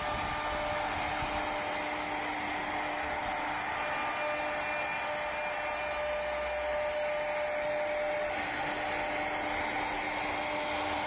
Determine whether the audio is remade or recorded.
recorded